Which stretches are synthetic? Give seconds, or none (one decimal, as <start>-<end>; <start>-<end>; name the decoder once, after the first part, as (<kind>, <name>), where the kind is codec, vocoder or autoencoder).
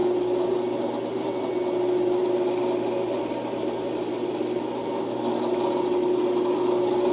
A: none